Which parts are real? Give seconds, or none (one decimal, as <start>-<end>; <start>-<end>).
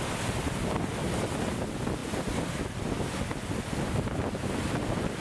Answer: 0.0-5.2